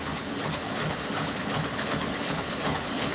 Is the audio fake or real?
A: fake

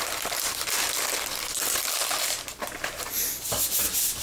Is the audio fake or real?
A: real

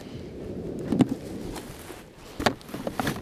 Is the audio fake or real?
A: real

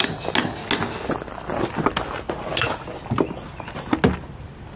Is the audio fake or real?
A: real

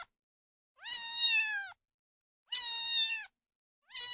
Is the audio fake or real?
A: real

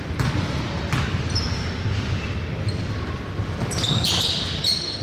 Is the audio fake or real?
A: real